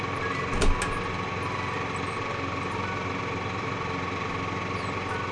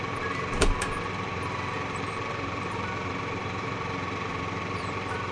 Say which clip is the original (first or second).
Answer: first